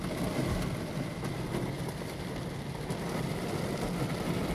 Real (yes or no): yes